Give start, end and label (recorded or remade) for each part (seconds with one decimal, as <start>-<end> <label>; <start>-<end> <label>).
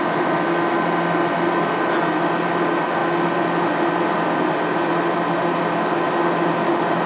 0.0-7.1 recorded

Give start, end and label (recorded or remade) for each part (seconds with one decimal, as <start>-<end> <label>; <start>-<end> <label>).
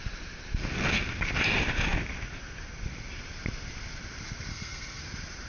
0.0-4.5 recorded; 4.5-5.0 remade; 5.0-5.5 recorded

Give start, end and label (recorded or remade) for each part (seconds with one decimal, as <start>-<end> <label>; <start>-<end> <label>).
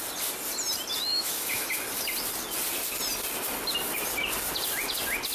0.0-1.1 recorded; 1.1-1.7 remade; 1.7-5.3 recorded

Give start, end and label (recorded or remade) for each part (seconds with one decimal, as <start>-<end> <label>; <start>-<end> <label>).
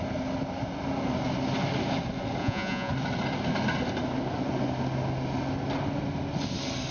0.0-2.4 recorded; 2.4-2.9 remade; 2.9-6.9 recorded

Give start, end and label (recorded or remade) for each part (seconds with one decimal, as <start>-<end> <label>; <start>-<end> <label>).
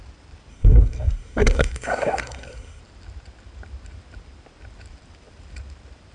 0.0-0.5 recorded; 0.5-2.8 remade; 2.8-6.1 recorded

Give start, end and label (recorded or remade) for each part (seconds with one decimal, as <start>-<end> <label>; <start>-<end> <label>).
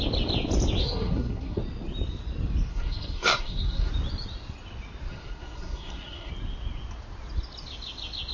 0.0-0.8 recorded; 0.8-1.6 remade; 1.6-2.7 recorded; 2.7-3.9 remade; 3.9-5.1 recorded; 5.1-6.3 remade; 6.3-8.3 recorded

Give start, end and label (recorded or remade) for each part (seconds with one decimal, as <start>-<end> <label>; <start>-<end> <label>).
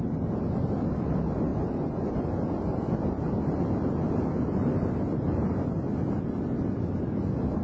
0.0-1.5 recorded; 1.5-2.3 remade; 2.3-7.6 recorded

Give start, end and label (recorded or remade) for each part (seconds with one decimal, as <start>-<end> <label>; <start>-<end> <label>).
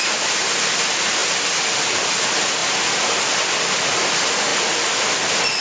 0.0-5.6 recorded